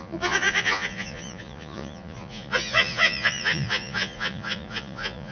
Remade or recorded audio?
remade